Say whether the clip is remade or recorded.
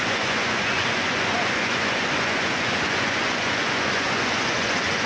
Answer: remade